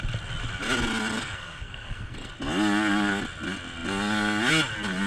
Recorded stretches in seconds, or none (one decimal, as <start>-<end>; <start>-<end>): 0.0-1.2; 2.3-5.1